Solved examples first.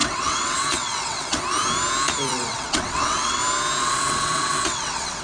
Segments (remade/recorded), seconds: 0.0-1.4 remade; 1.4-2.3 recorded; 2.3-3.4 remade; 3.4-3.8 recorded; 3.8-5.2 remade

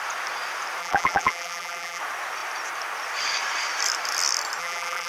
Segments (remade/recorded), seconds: 0.0-0.8 recorded; 0.8-2.0 remade; 2.0-4.6 recorded; 4.6-5.1 remade

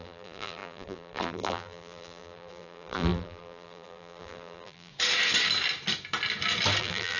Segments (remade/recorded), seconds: 0.0-4.9 remade; 4.9-6.8 recorded; 6.8-7.2 remade

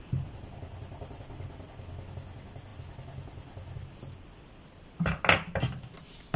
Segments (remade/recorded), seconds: 0.0-6.4 recorded

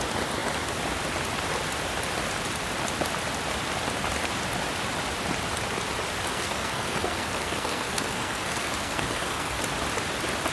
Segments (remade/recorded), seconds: 0.0-6.3 recorded; 6.3-9.6 remade; 9.6-10.5 recorded

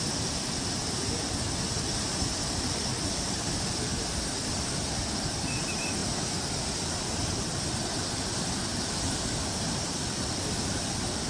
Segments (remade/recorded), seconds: 0.0-0.8 remade; 0.8-4.4 recorded; 4.4-6.0 remade; 6.0-7.2 recorded; 7.2-8.7 remade; 8.7-9.7 recorded; 9.7-11.3 remade

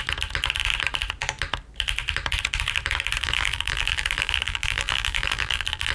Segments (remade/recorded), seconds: 0.0-3.2 recorded; 3.2-5.9 remade